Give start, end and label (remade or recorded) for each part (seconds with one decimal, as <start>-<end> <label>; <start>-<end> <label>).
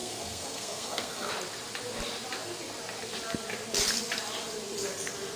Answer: 0.0-1.3 remade; 1.3-5.4 recorded